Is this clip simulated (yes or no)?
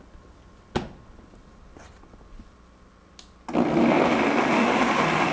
no